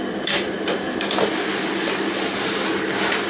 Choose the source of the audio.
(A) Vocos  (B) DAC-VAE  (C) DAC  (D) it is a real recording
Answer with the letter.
D